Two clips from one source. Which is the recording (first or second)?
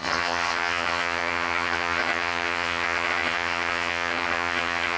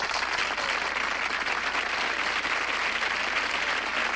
second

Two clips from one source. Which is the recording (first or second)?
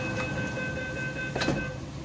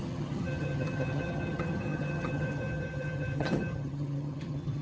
first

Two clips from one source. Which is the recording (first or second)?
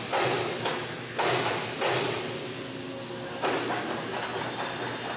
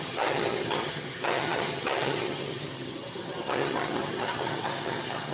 first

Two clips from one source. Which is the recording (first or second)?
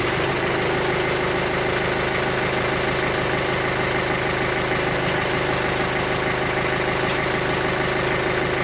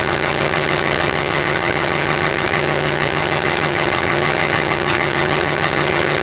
first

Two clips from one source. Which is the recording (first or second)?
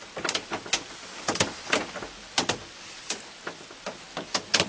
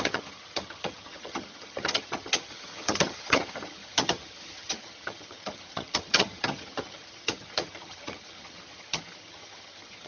first